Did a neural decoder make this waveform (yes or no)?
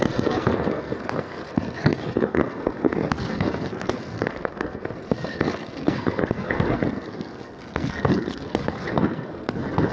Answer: yes